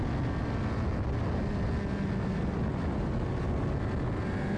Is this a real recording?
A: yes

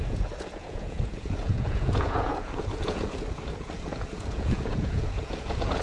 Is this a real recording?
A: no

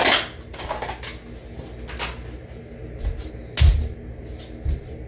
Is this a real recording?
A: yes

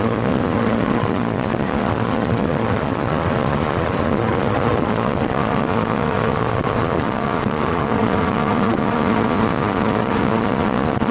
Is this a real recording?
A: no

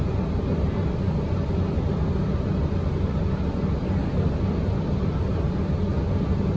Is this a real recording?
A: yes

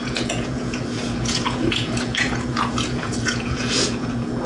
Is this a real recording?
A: no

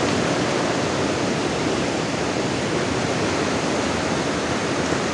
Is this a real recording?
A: yes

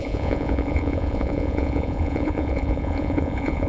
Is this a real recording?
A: no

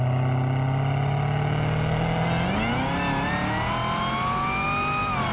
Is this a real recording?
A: yes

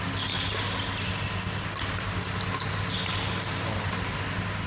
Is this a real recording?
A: yes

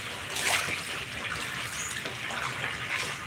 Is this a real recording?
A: yes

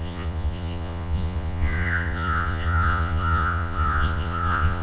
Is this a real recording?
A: no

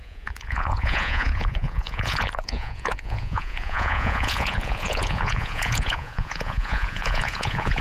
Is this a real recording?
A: no